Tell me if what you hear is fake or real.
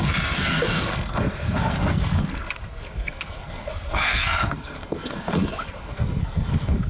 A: fake